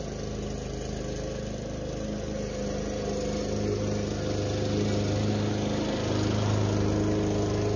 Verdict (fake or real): real